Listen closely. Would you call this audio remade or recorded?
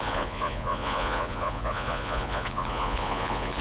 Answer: remade